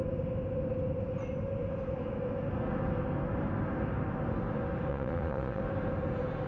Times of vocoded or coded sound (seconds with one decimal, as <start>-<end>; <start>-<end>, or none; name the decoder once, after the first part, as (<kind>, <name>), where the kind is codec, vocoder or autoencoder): 4.9-5.6 (vocoder, Vocos)